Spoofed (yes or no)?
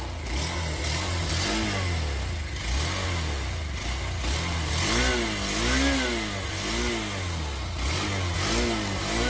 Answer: no